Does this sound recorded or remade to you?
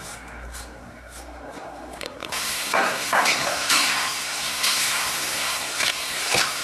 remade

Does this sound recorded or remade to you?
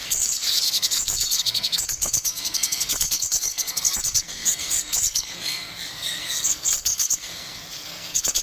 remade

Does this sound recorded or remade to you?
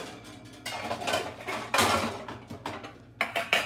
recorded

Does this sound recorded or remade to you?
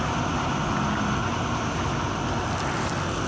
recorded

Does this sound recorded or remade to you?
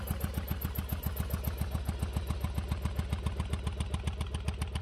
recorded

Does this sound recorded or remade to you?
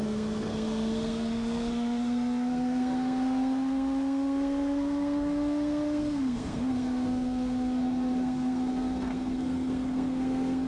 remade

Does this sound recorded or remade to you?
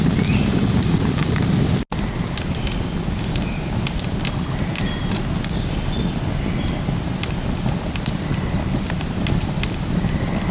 recorded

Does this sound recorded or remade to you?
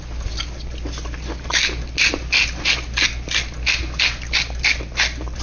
recorded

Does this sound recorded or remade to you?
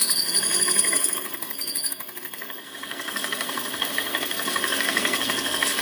remade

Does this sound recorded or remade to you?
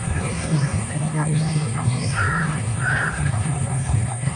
remade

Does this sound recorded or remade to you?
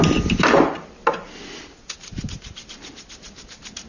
recorded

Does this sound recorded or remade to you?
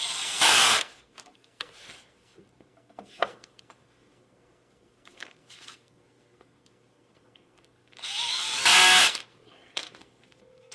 remade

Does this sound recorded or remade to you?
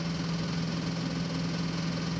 recorded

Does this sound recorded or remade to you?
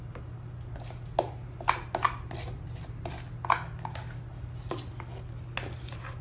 recorded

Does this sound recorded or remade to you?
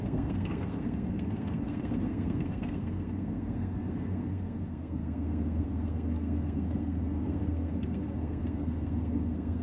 remade